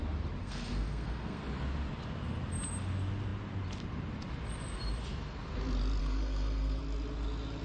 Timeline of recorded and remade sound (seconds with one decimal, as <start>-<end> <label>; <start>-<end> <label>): 0.0-0.4 recorded; 0.4-1.4 remade; 1.4-6.0 recorded; 6.0-6.8 remade; 6.8-7.6 recorded

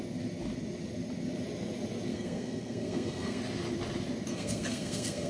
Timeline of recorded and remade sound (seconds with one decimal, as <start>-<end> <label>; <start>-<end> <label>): 0.0-2.1 recorded; 2.1-3.4 remade; 3.4-4.3 recorded; 4.3-5.3 remade

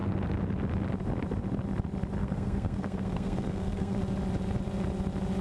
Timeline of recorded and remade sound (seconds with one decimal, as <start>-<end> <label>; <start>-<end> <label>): 0.0-2.2 recorded; 2.2-4.0 remade; 4.0-5.4 recorded

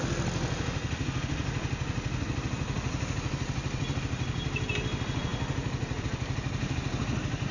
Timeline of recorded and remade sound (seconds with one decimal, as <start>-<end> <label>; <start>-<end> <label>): 0.0-7.5 recorded

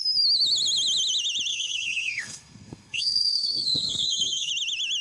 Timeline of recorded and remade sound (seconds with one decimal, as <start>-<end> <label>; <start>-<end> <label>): 0.0-1.5 recorded; 1.5-4.5 remade; 4.5-5.0 recorded